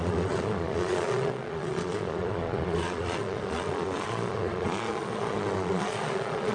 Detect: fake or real fake